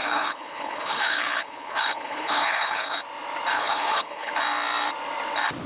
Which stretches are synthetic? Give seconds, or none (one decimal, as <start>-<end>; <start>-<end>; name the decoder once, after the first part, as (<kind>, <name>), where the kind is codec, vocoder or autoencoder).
0.0-3.0 (codec, HILCodec); 3.5-4.3